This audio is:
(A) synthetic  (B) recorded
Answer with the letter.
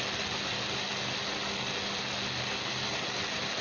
B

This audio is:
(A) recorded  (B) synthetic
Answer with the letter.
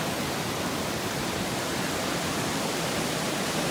B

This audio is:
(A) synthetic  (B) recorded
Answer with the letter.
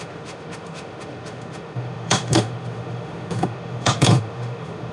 A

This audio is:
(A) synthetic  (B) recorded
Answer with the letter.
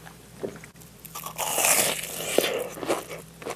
A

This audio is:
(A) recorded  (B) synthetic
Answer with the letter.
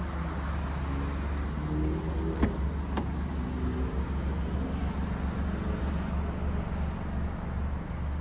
A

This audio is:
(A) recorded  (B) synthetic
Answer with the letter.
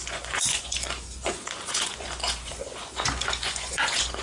B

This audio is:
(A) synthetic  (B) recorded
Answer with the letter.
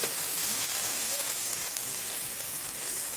A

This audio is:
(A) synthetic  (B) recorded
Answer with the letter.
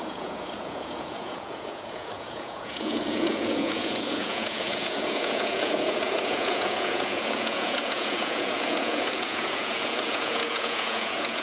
A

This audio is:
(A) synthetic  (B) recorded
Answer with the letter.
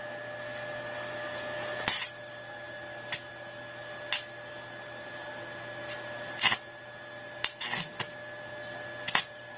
B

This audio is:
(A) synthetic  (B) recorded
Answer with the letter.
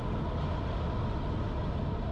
B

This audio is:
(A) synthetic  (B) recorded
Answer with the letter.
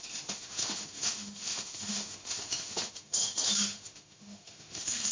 A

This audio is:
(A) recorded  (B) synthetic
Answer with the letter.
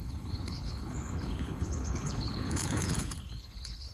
B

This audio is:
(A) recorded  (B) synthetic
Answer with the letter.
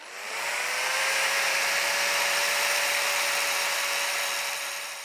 B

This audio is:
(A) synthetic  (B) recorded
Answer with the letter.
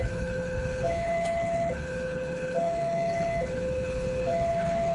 A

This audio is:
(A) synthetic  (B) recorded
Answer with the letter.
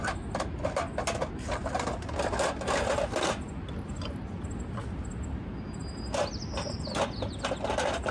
B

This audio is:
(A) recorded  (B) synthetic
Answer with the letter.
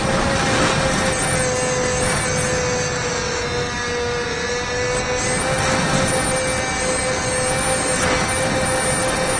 A